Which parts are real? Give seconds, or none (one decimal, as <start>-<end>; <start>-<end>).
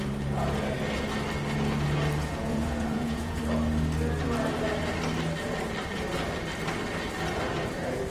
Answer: 0.0-2.3; 3.4-8.1